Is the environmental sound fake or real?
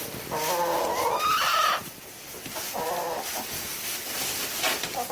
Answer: real